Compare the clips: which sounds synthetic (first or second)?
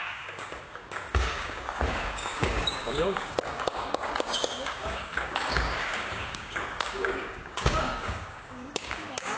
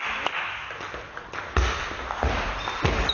first